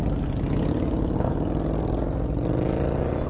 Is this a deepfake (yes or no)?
no